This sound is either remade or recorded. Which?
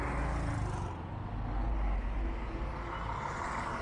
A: recorded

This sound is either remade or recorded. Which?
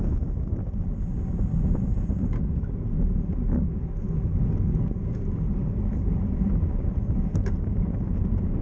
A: recorded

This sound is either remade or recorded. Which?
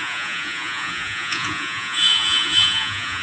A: remade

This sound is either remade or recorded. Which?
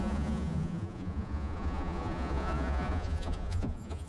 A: remade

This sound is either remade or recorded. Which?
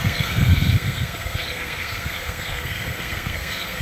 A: remade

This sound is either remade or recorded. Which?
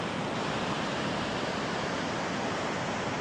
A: recorded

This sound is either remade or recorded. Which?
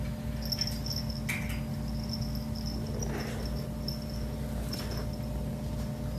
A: recorded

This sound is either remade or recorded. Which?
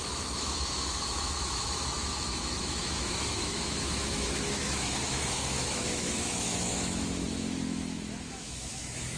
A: remade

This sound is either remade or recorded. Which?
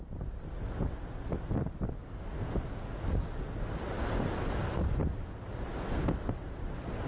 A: recorded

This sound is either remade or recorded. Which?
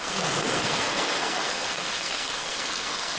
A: remade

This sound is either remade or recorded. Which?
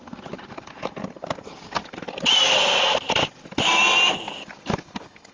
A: recorded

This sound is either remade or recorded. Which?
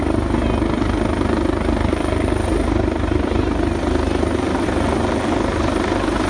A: recorded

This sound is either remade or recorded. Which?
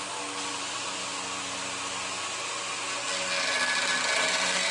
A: recorded